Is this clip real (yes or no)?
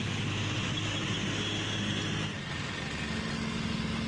yes